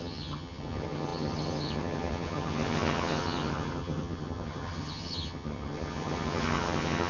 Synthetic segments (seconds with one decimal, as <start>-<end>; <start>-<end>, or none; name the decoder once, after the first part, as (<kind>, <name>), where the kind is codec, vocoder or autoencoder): 0.0-7.1 (vocoder, HiFi-GAN)